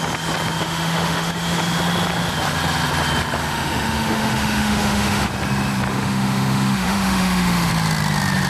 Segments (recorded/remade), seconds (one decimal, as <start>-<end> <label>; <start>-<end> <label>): 0.0-0.6 recorded; 0.6-1.6 remade; 1.6-3.4 recorded; 3.4-5.3 remade; 5.3-5.9 recorded; 5.9-7.7 remade; 7.7-8.5 recorded